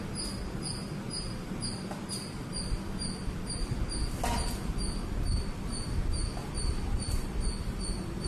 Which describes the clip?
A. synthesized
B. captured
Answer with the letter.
B